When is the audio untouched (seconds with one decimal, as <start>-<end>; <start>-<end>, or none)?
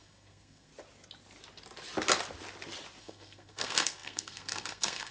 0.7-3.0